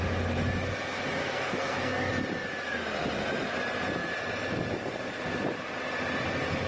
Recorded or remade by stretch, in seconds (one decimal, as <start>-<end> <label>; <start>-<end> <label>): 0.0-1.2 recorded; 1.2-2.1 remade; 2.1-6.7 recorded